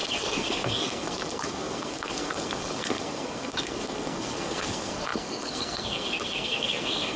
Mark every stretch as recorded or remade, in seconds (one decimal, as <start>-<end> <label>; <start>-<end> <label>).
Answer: 0.0-7.2 remade